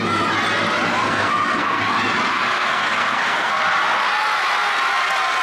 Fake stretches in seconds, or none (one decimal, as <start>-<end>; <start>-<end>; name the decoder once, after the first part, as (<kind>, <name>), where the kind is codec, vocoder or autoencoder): 1.0-1.8 (codec, SNAC); 2.3-3.6